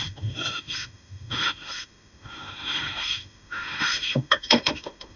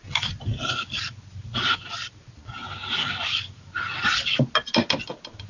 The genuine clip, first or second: second